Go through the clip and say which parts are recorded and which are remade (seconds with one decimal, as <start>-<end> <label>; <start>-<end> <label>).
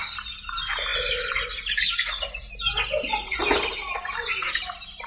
0.0-5.1 recorded